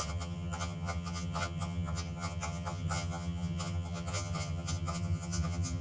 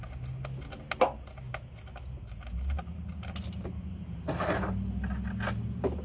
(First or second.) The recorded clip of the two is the second